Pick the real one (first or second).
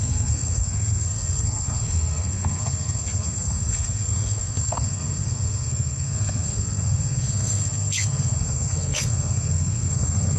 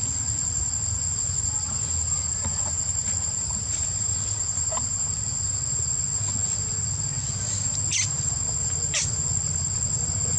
second